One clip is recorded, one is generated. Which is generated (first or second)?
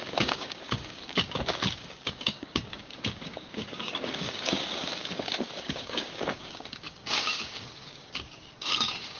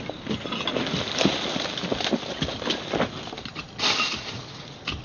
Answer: first